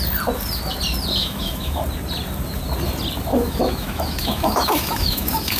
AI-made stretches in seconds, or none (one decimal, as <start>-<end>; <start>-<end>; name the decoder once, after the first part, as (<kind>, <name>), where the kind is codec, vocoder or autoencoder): 1.2-1.8 (autoencoder, DAC-VAE); 3.3-5.6